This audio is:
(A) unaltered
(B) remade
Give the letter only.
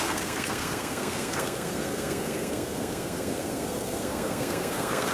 B